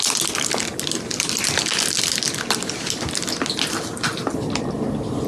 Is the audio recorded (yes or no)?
yes